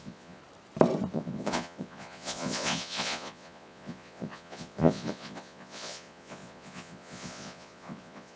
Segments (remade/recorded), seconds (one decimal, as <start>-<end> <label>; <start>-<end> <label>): 0.0-0.4 remade; 0.4-1.1 recorded; 1.1-8.4 remade